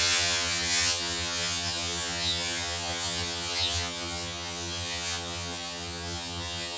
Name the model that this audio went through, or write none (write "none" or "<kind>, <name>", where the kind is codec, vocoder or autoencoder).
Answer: vocoder, HiFi-GAN